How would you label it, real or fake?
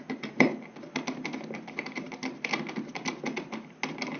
real